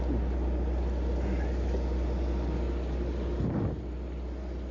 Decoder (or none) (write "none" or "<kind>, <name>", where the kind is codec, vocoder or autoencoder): none